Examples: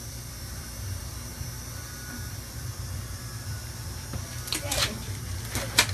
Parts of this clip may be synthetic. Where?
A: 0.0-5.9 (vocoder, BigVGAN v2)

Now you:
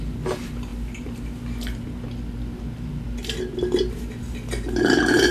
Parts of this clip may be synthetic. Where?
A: none